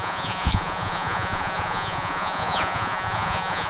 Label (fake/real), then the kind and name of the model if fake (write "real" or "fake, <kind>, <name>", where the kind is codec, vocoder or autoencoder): fake, vocoder, Vocos